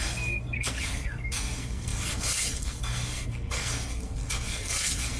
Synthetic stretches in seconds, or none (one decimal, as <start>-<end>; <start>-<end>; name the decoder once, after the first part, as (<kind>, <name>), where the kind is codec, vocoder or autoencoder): 0.0-5.2 (codec, SNAC)

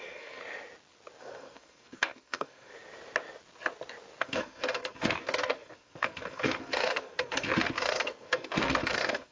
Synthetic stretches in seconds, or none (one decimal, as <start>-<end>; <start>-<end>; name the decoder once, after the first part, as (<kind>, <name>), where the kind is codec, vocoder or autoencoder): 0.0-0.4 (codec, SNAC); 1.2-2.7; 4.2-9.3

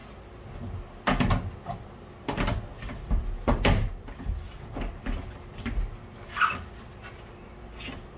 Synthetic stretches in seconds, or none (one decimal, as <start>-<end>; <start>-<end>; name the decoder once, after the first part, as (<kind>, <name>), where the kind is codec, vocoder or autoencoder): none

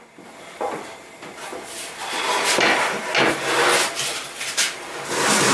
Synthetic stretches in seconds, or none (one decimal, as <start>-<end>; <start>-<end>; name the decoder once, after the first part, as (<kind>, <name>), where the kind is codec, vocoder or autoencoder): none

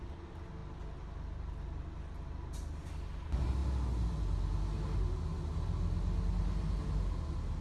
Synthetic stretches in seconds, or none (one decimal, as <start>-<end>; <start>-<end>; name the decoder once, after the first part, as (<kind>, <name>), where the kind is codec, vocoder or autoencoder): none

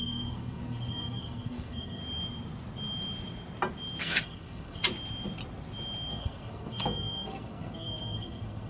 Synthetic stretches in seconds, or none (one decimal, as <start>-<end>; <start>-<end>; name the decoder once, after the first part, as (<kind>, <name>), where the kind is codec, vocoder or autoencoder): 0.0-2.0 (codec, SNAC); 4.0-4.8; 6.1-8.7

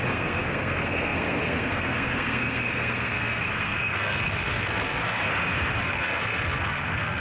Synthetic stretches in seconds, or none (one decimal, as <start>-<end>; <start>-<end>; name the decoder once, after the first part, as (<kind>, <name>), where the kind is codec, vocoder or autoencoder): 0.0-5.2 (codec, SNAC); 5.8-7.2

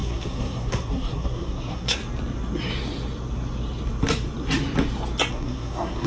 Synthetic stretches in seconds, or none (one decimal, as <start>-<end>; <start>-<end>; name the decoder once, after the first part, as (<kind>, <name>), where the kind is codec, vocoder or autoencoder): 0.0-2.0 (codec, SNAC); 5.3-6.1